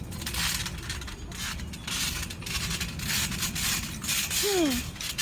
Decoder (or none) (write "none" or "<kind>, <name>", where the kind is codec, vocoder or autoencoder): none